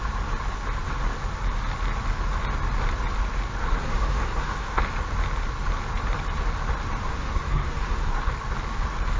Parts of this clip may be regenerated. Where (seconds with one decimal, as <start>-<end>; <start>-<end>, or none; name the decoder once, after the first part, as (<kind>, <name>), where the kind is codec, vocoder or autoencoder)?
3.6-4.8 (codec, SNAC); 7.1-8.3